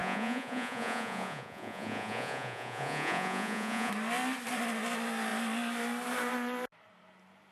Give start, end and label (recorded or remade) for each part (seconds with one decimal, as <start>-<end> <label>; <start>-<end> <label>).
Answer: 0.0-3.9 remade; 3.9-7.5 recorded